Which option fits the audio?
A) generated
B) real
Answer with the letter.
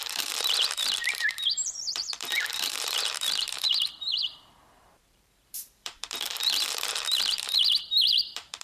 A